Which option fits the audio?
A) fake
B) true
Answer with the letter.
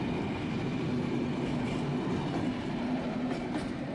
B